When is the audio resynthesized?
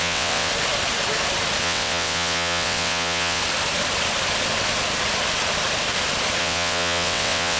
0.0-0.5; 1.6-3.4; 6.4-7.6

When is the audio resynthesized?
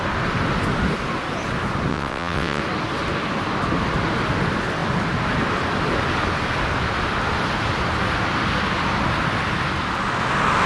1.9-2.6